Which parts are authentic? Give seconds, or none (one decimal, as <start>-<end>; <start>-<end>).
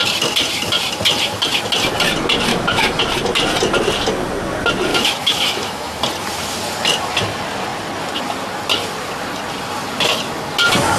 0.0-2.5; 3.0-4.9; 6.0-11.0